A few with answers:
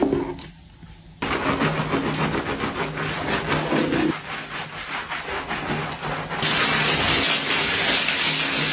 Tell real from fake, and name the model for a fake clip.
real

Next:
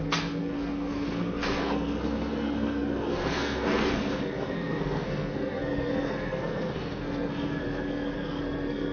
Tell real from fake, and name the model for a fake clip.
fake, codec, SNAC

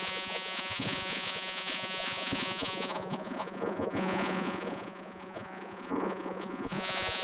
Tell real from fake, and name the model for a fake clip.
fake, vocoder, Vocos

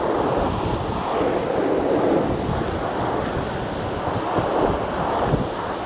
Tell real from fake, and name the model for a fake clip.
real